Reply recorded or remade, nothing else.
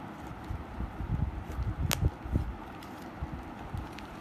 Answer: recorded